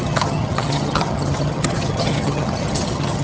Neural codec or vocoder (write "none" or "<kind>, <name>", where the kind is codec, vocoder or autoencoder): vocoder, HiFi-GAN